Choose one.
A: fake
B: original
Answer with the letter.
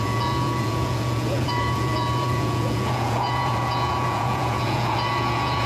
A